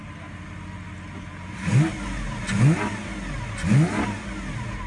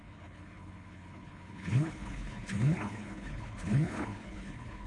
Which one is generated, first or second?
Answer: second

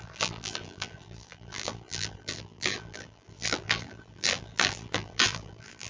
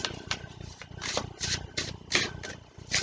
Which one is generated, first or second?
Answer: first